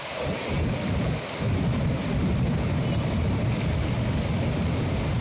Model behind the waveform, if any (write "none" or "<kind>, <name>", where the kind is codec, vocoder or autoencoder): none